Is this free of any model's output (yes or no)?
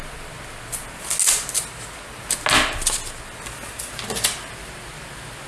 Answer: yes